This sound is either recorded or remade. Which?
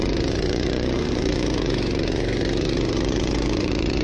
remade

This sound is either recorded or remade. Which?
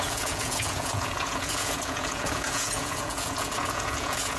remade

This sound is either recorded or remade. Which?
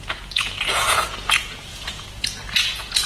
remade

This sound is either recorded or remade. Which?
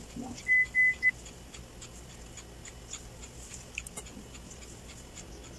recorded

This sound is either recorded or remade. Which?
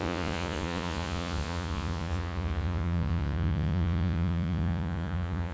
remade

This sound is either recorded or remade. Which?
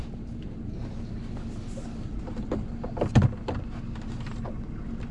recorded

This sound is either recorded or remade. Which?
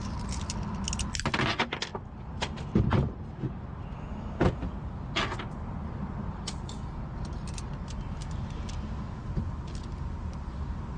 recorded